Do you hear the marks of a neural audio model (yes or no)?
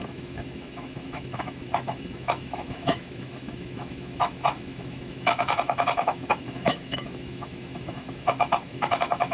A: yes